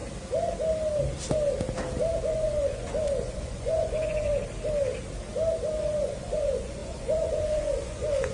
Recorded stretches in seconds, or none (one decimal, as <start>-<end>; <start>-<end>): 0.0-2.2; 4.3-5.8